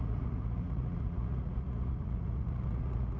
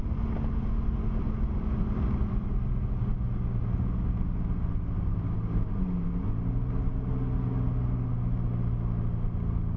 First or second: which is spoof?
first